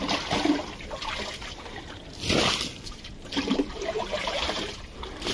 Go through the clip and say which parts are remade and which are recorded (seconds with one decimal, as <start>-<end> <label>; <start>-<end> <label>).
0.0-2.7 recorded; 2.7-4.6 remade; 4.6-5.3 recorded